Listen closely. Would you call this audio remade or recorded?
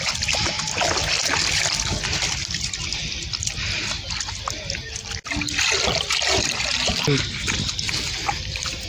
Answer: recorded